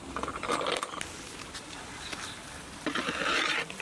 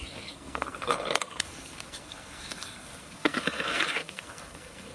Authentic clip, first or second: first